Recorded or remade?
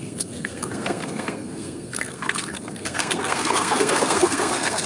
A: remade